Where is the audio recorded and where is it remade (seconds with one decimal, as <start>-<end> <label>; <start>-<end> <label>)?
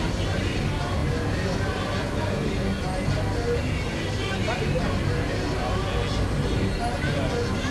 0.0-7.7 recorded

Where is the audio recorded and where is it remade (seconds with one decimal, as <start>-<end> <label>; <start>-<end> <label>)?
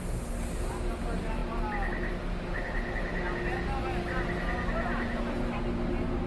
0.0-6.3 recorded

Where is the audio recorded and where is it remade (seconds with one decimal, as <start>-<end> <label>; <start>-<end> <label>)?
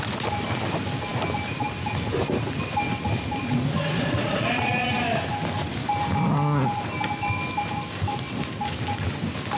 0.0-3.9 recorded; 3.9-5.0 remade; 5.0-9.6 recorded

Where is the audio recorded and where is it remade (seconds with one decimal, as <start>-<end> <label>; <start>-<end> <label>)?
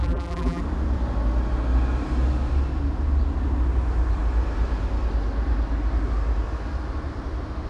0.0-0.6 remade; 0.6-7.7 recorded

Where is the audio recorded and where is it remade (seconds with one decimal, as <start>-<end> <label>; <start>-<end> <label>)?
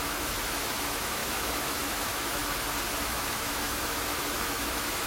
0.0-2.4 remade; 2.4-3.0 recorded; 3.0-5.1 remade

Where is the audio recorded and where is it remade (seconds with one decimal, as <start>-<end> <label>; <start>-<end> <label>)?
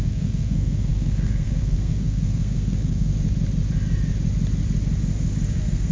0.0-3.1 remade; 3.1-5.5 recorded; 5.5-5.9 remade